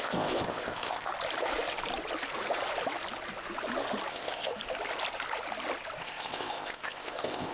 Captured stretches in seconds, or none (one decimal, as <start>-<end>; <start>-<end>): 1.1-4.1; 4.5-6.0